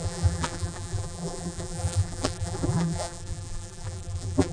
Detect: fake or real fake